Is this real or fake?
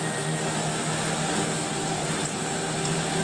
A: real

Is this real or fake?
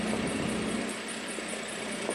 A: real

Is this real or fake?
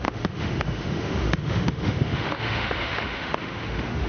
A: fake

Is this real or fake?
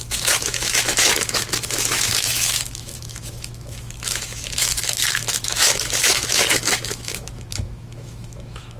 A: fake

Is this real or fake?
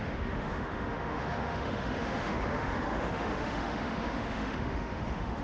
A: fake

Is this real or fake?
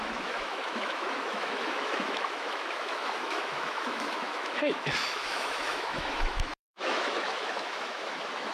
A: fake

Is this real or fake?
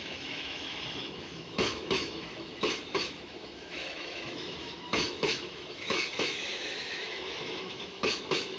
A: fake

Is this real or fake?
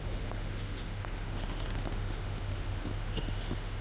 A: fake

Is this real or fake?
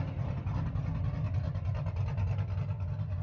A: real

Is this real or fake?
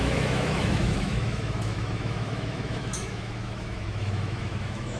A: fake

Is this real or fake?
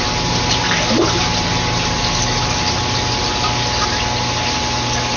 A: real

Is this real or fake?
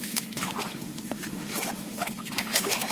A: fake